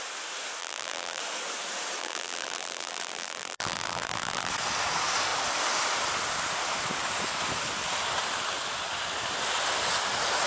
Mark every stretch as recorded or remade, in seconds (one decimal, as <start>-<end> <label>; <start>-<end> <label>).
0.0-0.6 recorded; 0.6-1.2 remade; 1.2-2.0 recorded; 2.0-4.5 remade; 4.5-10.5 recorded